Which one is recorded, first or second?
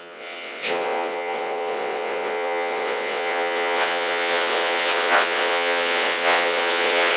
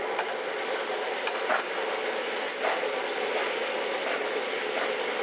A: second